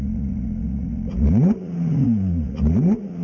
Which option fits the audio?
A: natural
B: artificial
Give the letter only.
B